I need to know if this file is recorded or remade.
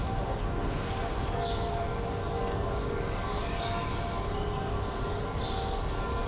recorded